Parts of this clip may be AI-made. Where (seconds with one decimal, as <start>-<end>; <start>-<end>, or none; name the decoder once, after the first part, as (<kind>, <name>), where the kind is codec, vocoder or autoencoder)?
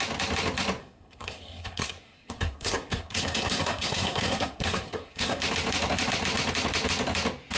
0.8-5.4 (codec, SNAC)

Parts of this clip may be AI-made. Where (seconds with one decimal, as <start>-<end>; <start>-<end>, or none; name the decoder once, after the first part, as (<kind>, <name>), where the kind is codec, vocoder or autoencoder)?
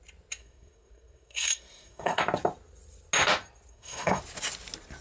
0.4-2.2 (codec, SNAC); 3.7-4.2